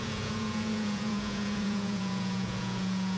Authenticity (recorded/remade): remade